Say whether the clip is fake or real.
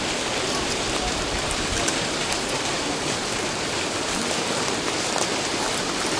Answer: real